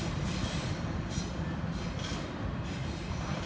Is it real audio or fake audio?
real